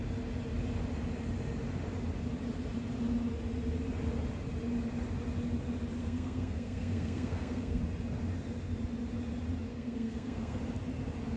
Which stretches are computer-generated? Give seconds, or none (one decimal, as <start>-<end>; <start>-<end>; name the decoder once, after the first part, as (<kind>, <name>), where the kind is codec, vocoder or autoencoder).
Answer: 6.0-7.8 (codec, SNAC); 9.7-10.6